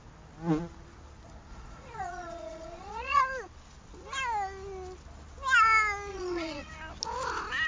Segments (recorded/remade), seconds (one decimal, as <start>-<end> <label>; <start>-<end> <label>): 0.0-1.5 recorded; 1.5-3.2 remade; 3.2-6.1 recorded; 6.1-6.7 remade; 6.7-7.7 recorded